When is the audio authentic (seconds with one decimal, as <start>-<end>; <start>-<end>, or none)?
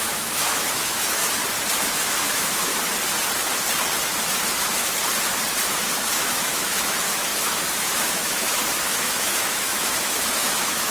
1.2-1.8; 2.7-6.0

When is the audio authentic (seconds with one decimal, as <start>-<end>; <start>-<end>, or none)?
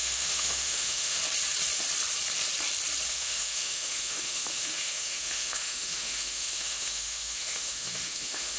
1.2-3.1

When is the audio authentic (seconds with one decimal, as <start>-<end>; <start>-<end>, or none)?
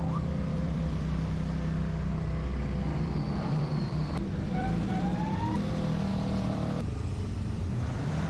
0.0-0.5; 1.1-2.9; 5.0-6.1; 6.9-8.3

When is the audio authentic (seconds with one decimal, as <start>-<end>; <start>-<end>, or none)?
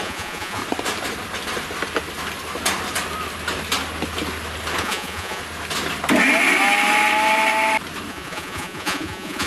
0.6-4.8; 5.4-8.1